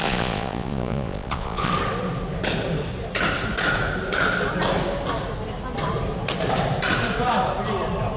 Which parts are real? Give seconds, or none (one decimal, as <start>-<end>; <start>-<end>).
1.7-8.2